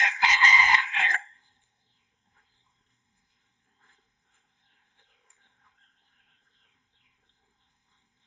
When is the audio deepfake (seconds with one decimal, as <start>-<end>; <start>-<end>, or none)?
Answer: 0.0-8.3